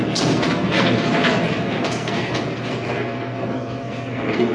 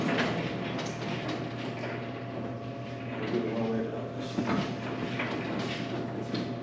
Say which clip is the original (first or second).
second